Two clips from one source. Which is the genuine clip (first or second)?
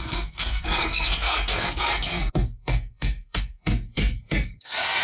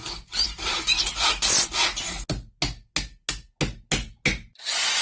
second